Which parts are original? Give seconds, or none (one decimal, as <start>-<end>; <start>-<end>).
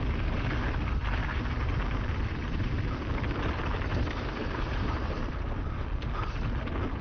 0.0-3.9; 5.3-7.0